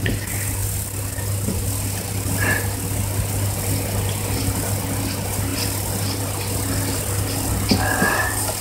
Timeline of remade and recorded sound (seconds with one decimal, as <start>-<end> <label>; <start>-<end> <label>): 0.0-0.6 recorded; 0.6-2.6 remade; 2.6-5.5 recorded; 5.5-6.2 remade; 6.2-8.6 recorded